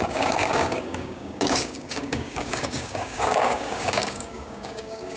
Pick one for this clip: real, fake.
fake